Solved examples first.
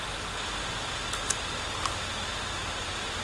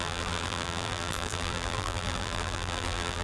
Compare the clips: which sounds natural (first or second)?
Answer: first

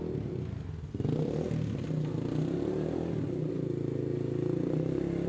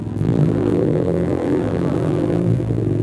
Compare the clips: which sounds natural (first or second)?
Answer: first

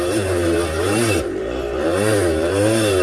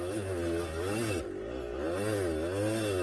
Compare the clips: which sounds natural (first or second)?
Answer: second